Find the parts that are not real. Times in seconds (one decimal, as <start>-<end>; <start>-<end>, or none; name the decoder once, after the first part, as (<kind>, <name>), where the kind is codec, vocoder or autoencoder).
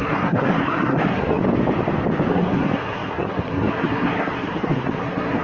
0.0-1.4 (codec, SNAC); 2.3-5.4